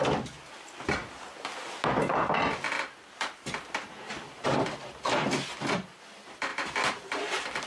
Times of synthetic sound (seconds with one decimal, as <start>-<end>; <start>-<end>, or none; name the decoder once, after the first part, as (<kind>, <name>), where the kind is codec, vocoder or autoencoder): 0.0-1.0 (vocoder, BigVGAN v2); 2.1-7.7